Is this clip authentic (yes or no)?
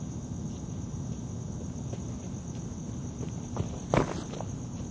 yes